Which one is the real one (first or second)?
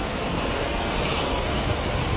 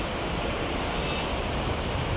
second